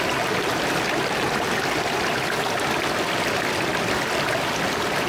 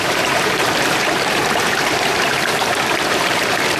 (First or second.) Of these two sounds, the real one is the first